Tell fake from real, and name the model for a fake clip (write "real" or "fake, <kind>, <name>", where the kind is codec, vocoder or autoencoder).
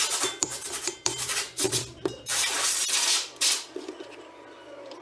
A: fake, vocoder, BigVGAN v2